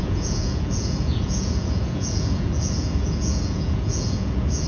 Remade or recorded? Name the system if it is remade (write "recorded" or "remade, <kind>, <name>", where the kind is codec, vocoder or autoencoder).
remade, vocoder, Vocos